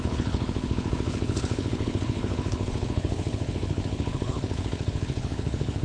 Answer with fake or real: fake